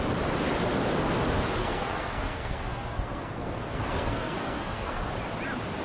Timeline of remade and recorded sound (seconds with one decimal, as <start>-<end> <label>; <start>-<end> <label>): 0.0-1.6 recorded; 1.6-5.1 remade; 5.1-5.8 recorded